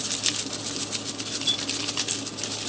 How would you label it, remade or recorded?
recorded